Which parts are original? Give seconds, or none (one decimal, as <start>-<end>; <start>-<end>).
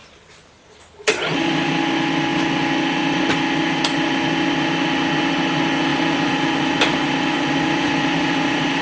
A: 1.8-5.9